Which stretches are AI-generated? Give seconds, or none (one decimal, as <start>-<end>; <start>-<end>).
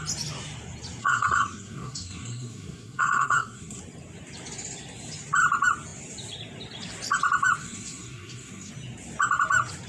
1.0-3.8; 7.6-8.7